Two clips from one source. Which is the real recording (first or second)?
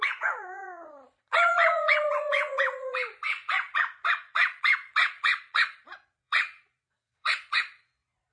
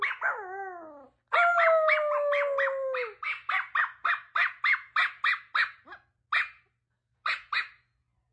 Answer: second